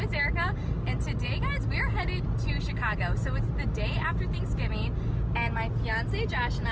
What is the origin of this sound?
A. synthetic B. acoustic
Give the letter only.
B